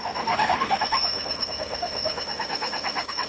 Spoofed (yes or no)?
yes